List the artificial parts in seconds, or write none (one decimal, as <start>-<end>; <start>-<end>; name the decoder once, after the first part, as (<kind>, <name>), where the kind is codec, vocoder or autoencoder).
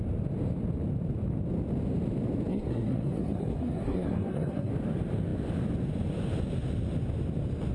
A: 2.5-4.7 (codec, SNAC)